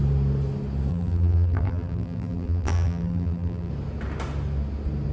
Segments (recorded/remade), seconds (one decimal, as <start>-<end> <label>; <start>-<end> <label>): 0.0-0.9 recorded; 0.9-3.7 remade; 3.7-5.1 recorded